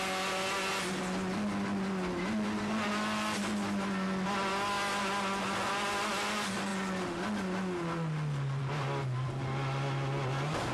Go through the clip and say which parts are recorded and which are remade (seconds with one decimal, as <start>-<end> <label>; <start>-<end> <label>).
0.0-10.7 recorded